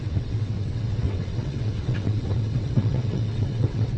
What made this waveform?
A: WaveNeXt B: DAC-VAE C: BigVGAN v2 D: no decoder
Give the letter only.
A